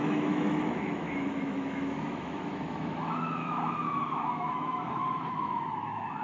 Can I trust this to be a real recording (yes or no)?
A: no